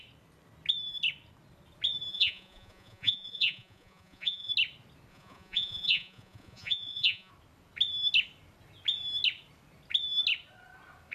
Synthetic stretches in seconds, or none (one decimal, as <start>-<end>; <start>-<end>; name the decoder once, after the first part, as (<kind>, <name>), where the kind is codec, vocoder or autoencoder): 2.1-4.5 (vocoder, Vocos); 5.1-7.3